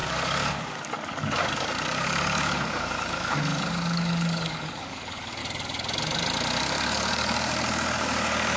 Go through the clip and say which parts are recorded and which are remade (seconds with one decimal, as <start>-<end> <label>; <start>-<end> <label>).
0.0-5.4 remade; 5.4-6.6 recorded; 6.6-8.6 remade

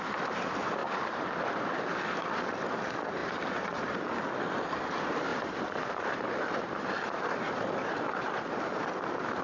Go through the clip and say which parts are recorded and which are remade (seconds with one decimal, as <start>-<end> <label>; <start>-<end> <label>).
0.0-3.2 recorded; 3.2-4.1 remade; 4.1-5.3 recorded; 5.3-8.3 remade; 8.3-9.4 recorded